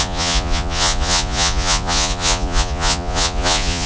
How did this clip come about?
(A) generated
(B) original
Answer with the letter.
A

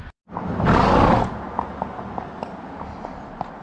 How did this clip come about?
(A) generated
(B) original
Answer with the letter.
B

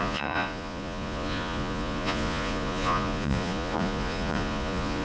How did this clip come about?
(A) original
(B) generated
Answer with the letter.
B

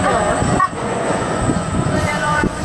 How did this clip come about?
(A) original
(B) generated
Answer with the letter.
B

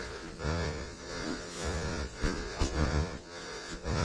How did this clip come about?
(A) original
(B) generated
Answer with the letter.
B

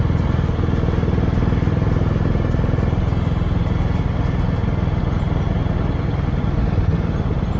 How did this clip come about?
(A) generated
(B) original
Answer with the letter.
B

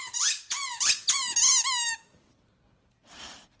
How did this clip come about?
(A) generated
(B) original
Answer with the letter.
B